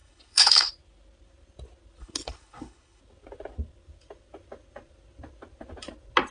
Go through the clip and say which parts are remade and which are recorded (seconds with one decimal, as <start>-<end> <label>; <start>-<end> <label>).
0.0-0.7 remade; 0.7-2.0 recorded; 2.0-3.0 remade; 3.0-6.3 recorded